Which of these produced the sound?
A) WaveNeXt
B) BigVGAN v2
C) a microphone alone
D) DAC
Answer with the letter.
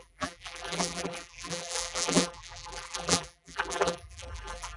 B